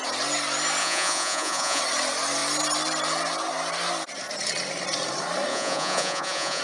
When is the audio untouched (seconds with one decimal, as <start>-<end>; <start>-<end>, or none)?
0.0-0.8; 1.8-5.5